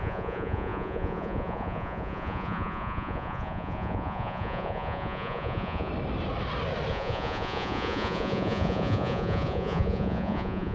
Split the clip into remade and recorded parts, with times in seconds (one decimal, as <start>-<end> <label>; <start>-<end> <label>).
0.0-5.9 remade; 5.9-6.9 recorded; 6.9-10.7 remade